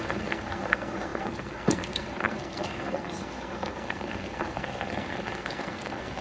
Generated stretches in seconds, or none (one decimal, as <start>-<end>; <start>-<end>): 0.0-6.2